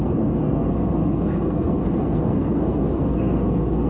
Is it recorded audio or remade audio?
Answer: remade